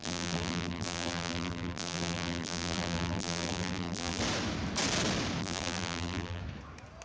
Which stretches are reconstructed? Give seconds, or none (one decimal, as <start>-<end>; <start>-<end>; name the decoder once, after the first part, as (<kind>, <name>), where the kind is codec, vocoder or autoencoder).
0.0-4.2 (vocoder, BigVGAN v2); 5.4-6.4